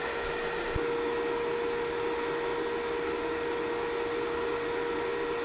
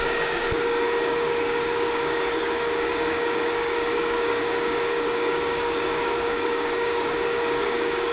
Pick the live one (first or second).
first